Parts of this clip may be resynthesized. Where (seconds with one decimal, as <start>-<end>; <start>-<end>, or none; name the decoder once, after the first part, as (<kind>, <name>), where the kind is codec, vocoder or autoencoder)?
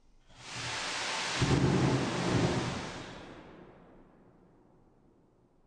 none